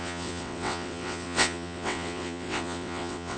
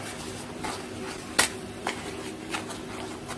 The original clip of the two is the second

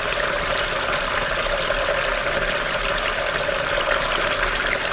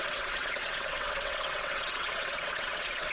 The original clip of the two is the first